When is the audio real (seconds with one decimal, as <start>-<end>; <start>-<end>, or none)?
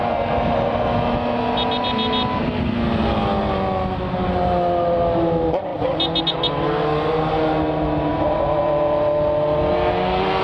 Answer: 0.0-10.4